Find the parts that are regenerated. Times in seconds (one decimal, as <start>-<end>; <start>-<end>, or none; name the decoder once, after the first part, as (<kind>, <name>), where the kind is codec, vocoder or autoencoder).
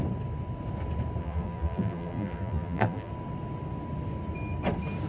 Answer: 1.2-3.1 (vocoder, BigVGAN v2)